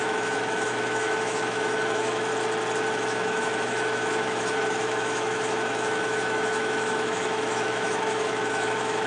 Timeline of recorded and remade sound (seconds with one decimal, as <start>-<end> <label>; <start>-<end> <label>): 0.0-2.3 remade; 2.3-2.9 recorded; 2.9-9.1 remade